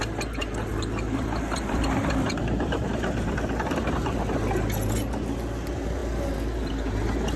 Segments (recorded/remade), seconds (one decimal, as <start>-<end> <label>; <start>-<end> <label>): 0.0-0.4 recorded; 0.4-4.4 remade; 4.4-7.4 recorded